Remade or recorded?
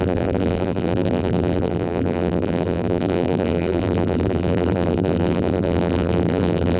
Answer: remade